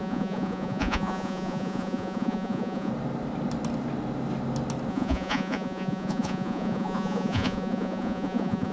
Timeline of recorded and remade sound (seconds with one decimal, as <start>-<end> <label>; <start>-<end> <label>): 0.0-2.9 remade; 2.9-4.9 recorded; 4.9-8.7 remade